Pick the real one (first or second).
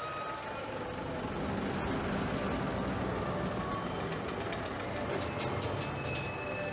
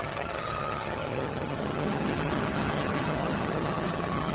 first